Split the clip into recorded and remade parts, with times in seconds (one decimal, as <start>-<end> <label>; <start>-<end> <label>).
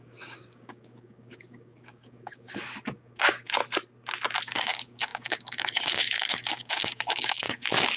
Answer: 0.0-3.6 remade; 3.6-4.4 recorded; 4.4-8.0 remade